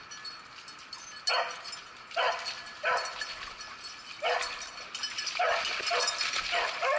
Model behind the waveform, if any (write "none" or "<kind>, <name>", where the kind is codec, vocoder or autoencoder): none